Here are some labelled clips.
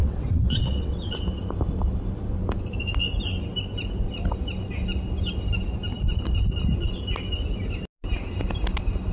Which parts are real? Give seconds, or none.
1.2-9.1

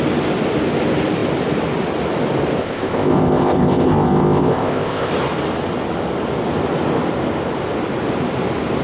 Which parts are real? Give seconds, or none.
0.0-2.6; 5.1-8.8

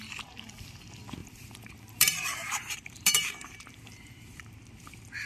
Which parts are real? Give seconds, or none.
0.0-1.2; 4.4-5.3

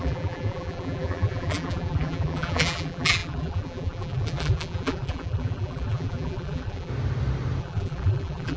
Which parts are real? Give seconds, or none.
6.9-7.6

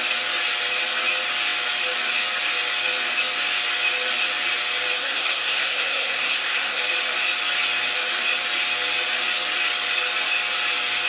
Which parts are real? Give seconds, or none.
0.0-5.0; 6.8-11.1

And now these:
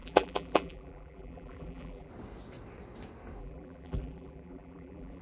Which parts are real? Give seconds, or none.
2.1-3.4

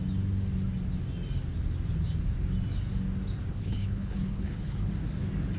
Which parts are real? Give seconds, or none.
0.0-3.5; 4.9-5.6

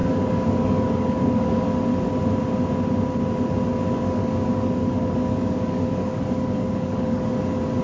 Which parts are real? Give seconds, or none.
1.7-3.7; 7.2-7.8